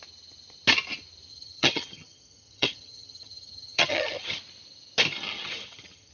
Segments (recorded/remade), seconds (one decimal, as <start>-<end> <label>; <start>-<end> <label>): 0.0-1.3 recorded; 1.3-4.4 remade; 4.4-5.1 recorded; 5.1-6.1 remade